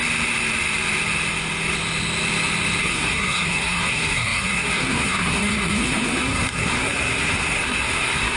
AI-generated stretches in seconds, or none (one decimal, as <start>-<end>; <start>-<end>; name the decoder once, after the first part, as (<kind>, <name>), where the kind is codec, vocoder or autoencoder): 2.8-8.4 (codec, SNAC)